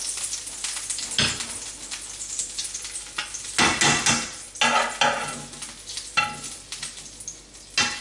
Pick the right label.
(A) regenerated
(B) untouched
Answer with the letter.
B